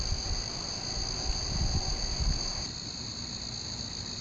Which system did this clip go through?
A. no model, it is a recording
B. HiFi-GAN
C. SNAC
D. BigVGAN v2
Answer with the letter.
A